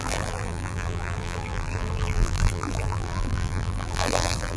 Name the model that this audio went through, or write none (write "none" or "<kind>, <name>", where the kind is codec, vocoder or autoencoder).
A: vocoder, BigVGAN v2